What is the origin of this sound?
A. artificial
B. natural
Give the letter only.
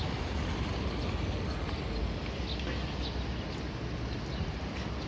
B